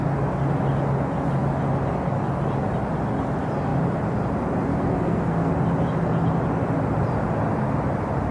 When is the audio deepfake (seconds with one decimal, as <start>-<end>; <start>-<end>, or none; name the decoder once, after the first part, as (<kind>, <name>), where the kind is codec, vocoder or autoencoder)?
4.7-5.5 (codec, SNAC)